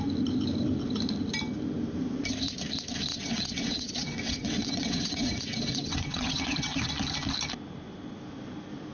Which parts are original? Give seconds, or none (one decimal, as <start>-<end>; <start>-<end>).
0.0-3.1; 6.9-8.9